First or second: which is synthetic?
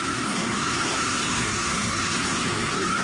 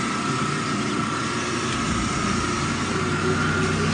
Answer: first